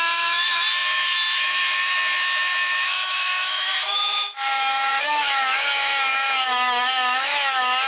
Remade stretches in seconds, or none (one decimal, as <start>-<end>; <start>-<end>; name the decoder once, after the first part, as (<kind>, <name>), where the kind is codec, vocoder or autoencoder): 0.0-7.9 (autoencoder, DAC-VAE)